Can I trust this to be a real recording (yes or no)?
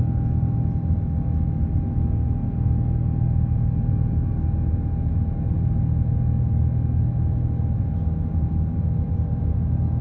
yes